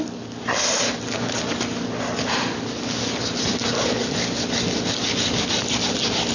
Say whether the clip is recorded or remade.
recorded